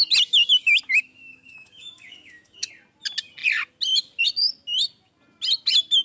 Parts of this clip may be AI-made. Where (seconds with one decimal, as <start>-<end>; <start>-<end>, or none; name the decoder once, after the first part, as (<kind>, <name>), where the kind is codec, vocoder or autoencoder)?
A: 0.6-2.7 (autoencoder, DAC-VAE)